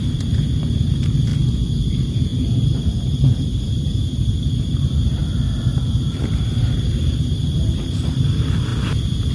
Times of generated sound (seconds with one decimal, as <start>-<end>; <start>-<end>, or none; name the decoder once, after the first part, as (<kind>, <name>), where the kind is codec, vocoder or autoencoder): 0.0-1.3 (vocoder, BigVGAN v2); 1.9-5.2; 5.9-8.7